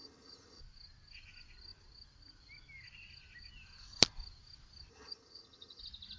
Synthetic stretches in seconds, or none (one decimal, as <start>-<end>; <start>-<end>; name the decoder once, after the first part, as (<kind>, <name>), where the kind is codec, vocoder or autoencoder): 0.0-0.6 (vocoder, HiFi-GAN); 4.9-5.8